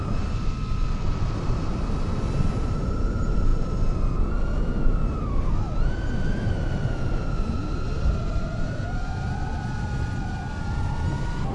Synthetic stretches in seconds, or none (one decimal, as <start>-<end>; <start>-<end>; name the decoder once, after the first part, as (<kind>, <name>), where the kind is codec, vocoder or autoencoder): none